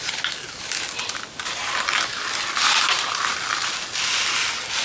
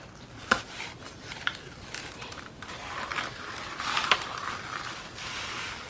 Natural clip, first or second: first